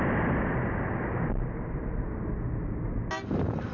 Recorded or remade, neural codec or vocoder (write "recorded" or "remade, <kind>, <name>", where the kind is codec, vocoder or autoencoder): recorded